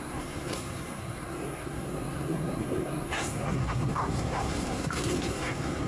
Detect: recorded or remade remade